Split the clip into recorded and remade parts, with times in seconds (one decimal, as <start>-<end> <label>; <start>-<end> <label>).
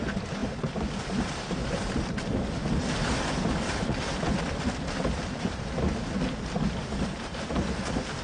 0.0-8.2 recorded